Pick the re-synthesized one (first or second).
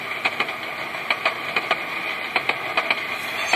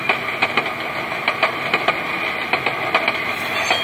first